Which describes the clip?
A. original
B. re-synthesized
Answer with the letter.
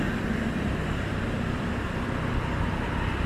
A